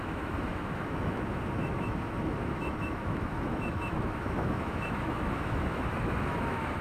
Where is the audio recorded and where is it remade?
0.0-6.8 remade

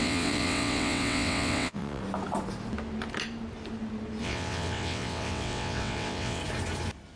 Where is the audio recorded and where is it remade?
0.0-2.0 remade; 2.0-4.2 recorded; 4.2-6.4 remade; 6.4-7.2 recorded

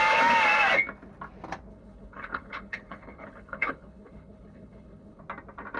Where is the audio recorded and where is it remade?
0.0-1.7 recorded; 1.7-5.2 remade; 5.2-5.8 recorded

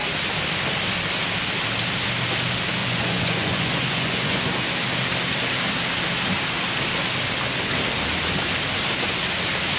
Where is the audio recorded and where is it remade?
0.0-2.8 recorded; 2.8-4.5 remade; 4.5-9.8 recorded

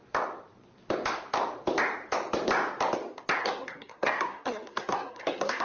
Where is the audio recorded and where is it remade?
0.0-3.4 recorded; 3.4-5.6 remade

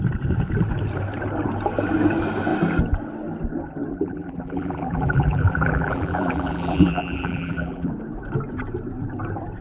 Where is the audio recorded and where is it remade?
0.0-3.9 recorded; 3.9-7.9 remade; 7.9-9.6 recorded